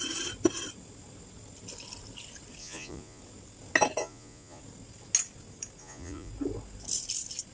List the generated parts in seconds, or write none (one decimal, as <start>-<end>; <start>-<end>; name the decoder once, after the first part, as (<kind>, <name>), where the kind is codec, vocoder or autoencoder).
2.6-3.2 (vocoder, Vocos); 4.0-4.6; 5.8-6.3